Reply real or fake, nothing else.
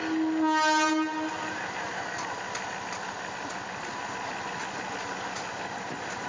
real